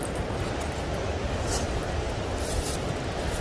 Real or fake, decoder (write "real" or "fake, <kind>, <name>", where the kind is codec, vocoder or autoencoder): real